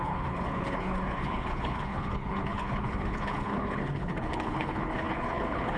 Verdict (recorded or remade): remade